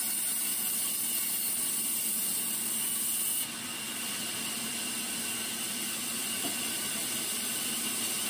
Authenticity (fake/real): real